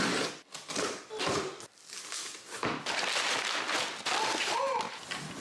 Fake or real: real